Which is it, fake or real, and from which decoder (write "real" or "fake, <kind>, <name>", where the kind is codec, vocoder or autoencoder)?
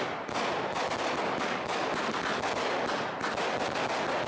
real